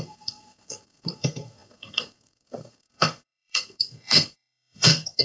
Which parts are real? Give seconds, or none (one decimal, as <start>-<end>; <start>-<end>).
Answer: none